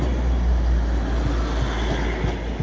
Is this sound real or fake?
real